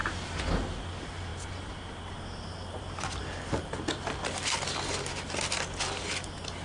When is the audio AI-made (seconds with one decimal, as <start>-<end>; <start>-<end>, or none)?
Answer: none